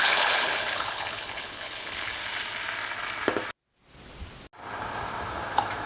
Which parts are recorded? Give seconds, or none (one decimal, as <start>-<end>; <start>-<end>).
2.2-5.9